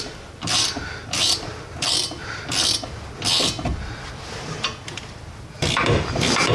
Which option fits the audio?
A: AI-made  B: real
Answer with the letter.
A